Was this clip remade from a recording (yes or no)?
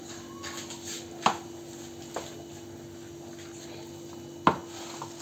no